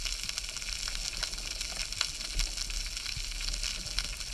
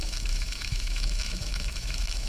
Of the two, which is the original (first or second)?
first